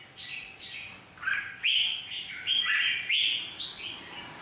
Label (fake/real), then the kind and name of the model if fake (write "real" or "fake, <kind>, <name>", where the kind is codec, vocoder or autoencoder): real